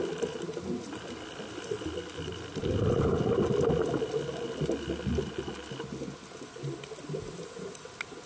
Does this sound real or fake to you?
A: real